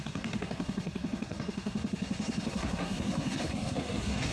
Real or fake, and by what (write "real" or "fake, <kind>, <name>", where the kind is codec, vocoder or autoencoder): fake, codec, SNAC